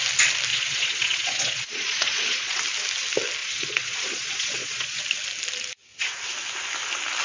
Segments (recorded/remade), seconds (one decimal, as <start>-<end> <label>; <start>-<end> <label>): 0.0-0.5 recorded; 0.5-2.6 remade; 2.6-3.4 recorded; 3.4-5.0 remade; 5.0-7.2 recorded